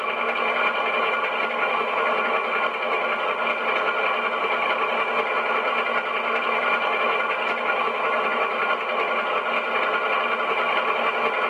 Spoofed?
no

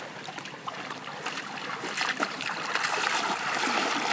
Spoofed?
yes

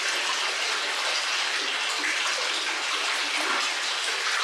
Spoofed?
no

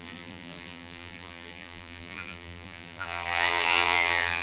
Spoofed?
yes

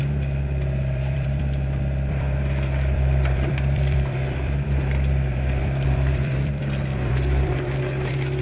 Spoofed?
yes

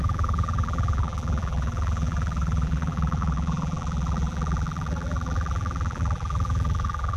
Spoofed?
yes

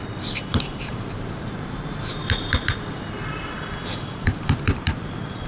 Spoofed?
yes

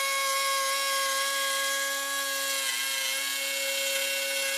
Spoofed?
no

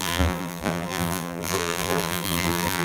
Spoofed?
yes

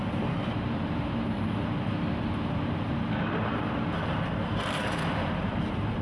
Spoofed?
yes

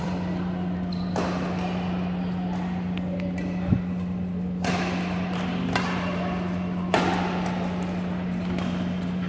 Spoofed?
yes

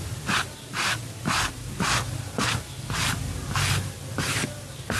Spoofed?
yes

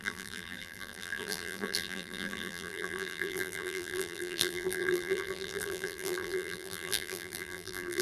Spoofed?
yes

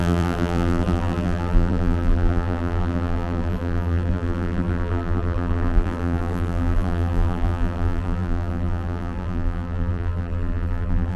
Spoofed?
yes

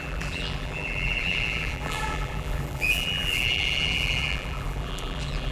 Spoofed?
yes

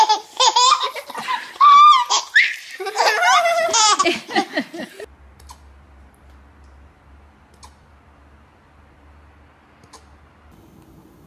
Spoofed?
no